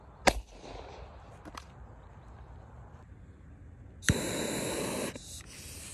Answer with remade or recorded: recorded